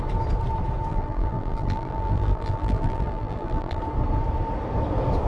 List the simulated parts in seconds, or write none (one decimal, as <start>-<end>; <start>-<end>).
0.9-3.8